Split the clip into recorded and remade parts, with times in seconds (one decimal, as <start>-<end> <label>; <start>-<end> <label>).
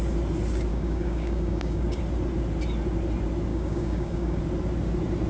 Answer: 0.0-0.7 recorded; 0.7-2.0 remade; 2.0-3.5 recorded; 3.5-4.4 remade; 4.4-5.3 recorded